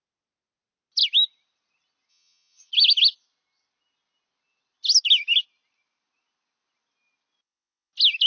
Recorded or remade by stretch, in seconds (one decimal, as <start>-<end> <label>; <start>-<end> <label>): 0.0-2.1 recorded; 2.1-2.7 remade; 2.7-8.3 recorded